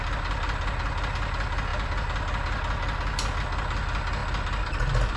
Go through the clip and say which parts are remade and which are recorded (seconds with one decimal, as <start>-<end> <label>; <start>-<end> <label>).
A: 0.0-5.2 recorded